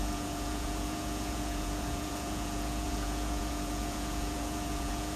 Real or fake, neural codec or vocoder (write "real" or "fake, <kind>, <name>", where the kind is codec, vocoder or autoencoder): fake, vocoder, Vocos